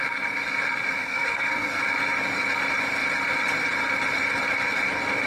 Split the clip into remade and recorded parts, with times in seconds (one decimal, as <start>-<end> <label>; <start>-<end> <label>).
0.0-1.0 recorded; 1.0-1.8 remade; 1.8-5.3 recorded

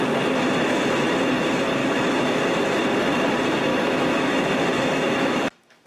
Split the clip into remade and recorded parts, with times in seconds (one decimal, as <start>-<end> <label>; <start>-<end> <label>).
0.0-1.8 recorded; 1.8-2.4 remade; 2.4-3.7 recorded; 3.7-5.9 remade

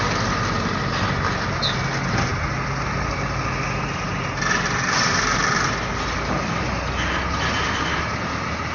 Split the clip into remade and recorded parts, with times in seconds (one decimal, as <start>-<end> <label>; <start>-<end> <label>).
0.0-8.7 recorded

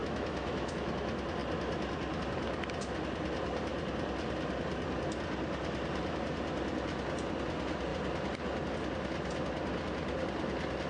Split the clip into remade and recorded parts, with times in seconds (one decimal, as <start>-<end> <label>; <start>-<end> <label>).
0.0-0.9 remade; 0.9-10.9 recorded

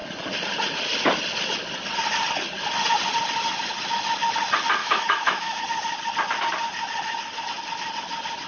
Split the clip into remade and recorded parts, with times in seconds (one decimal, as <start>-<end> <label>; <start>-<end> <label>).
0.0-4.8 recorded; 4.8-5.6 remade; 5.6-8.5 recorded

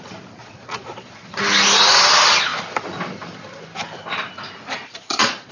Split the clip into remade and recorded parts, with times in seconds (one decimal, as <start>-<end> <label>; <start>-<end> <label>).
0.0-0.4 recorded; 0.4-1.4 remade; 1.4-4.8 recorded; 4.8-5.5 remade

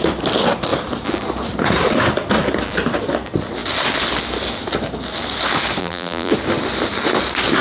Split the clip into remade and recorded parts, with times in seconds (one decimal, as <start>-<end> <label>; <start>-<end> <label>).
0.0-5.8 recorded; 5.8-6.3 remade; 6.3-7.6 recorded